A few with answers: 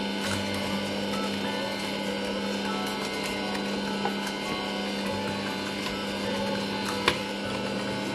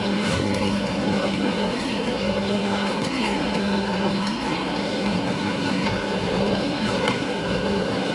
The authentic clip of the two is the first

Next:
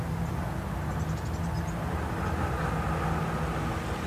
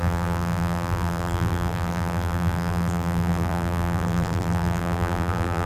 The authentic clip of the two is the first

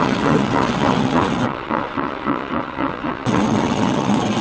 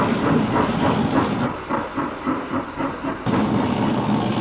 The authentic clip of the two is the second